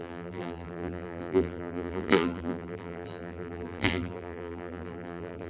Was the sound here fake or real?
fake